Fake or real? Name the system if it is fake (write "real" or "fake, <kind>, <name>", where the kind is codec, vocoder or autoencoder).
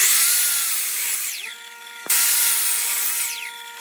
fake, vocoder, BigVGAN v2